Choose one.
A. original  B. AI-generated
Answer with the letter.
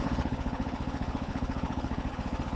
B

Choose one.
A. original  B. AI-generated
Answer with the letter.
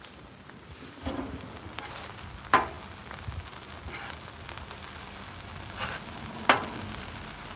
A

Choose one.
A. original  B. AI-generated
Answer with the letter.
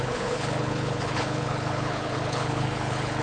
B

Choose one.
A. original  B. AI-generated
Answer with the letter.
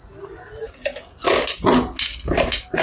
A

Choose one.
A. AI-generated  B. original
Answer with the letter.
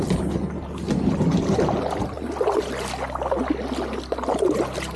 B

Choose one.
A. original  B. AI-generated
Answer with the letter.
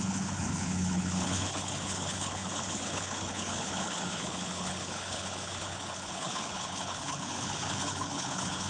B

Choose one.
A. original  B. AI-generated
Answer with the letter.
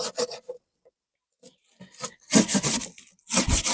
A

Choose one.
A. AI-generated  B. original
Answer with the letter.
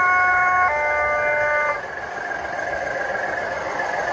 B